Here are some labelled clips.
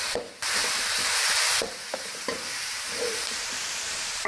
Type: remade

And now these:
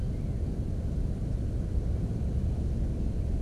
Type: recorded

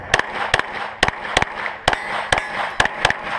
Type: recorded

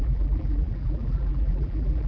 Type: remade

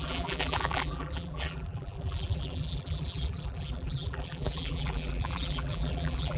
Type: remade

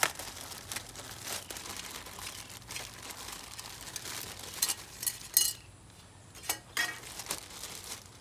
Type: recorded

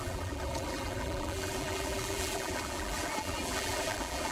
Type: remade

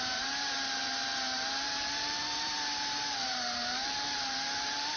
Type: remade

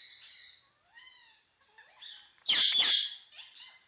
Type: recorded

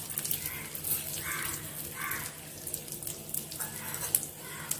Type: recorded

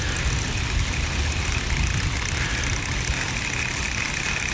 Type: recorded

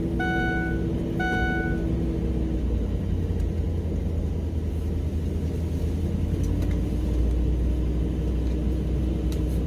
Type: recorded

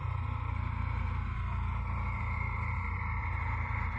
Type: remade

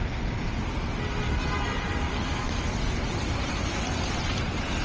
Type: recorded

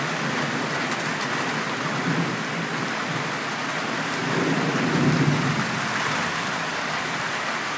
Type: recorded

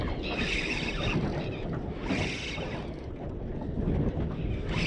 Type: recorded